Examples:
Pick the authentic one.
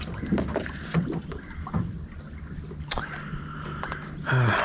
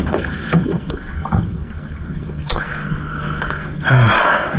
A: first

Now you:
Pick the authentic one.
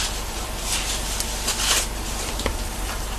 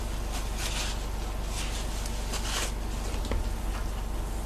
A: second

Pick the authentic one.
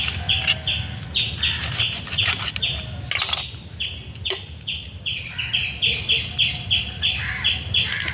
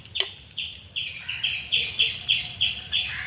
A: first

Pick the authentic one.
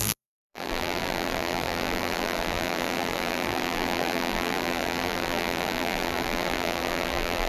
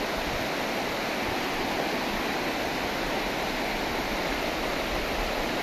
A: second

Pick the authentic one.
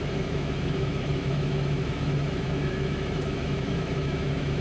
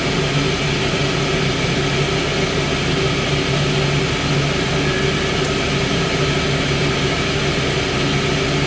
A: second